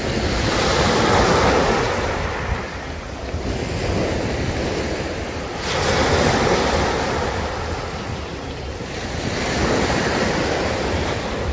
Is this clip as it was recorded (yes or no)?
yes